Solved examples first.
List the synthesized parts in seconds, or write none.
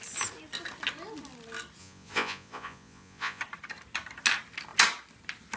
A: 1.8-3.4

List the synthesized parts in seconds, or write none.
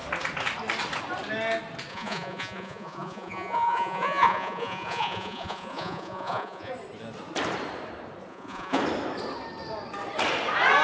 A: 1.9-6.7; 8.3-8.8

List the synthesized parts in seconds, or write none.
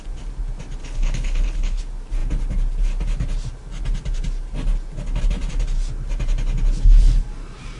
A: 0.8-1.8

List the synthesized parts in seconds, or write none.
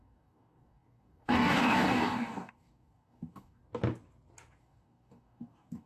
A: 0.0-3.6; 4.6-5.9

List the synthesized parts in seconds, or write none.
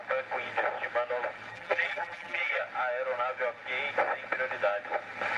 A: 1.5-2.6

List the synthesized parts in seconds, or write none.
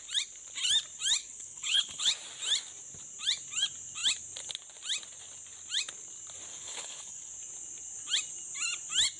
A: 1.2-2.1; 6.5-7.3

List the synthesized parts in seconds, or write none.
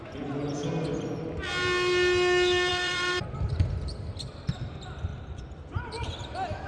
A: 2.7-4.4; 5.1-6.7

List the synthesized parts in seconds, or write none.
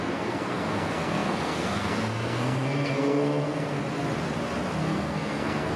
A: 0.0-3.8; 4.8-5.8